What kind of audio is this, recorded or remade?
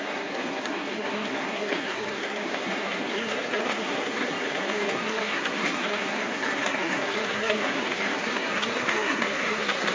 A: remade